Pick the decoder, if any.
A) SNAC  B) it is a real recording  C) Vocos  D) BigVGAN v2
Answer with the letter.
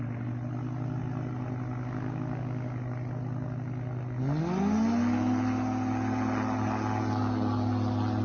B